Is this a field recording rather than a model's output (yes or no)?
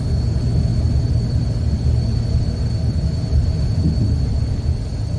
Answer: yes